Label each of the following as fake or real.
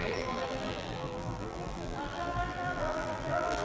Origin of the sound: fake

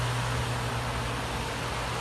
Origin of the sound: real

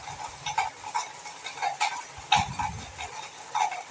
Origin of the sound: real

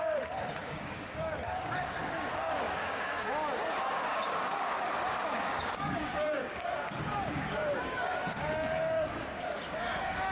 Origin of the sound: fake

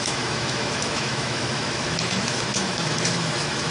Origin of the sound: fake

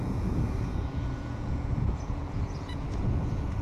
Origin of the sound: fake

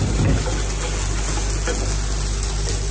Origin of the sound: real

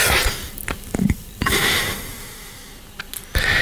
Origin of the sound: real